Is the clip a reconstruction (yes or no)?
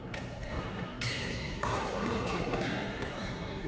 yes